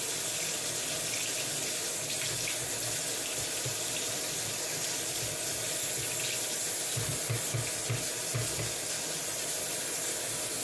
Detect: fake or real real